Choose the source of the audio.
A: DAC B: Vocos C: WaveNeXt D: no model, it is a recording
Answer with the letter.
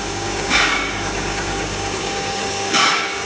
A